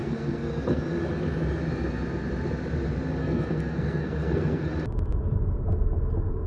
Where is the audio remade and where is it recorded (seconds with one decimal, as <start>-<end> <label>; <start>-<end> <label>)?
0.0-0.8 remade; 0.8-3.2 recorded; 3.2-4.7 remade; 4.7-6.5 recorded